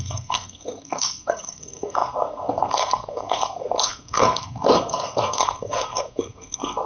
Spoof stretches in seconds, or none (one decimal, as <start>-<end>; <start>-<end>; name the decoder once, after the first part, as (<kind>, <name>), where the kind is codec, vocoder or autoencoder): 0.0-6.9 (codec, SNAC)